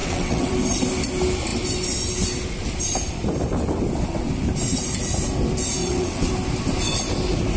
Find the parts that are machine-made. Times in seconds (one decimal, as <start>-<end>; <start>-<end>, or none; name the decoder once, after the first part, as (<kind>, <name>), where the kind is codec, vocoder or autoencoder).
0.0-0.5 (vocoder, WaveNeXt); 5.8-6.3